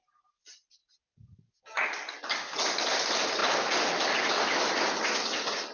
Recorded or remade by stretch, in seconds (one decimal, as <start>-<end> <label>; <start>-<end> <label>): 0.0-5.7 recorded